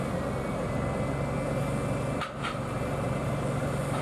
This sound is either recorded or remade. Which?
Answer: recorded